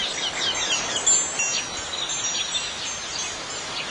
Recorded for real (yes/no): yes